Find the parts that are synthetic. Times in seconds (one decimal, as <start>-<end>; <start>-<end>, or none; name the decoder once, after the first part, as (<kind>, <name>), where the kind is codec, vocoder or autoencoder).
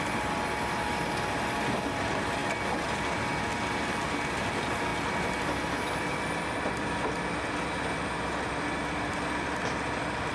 none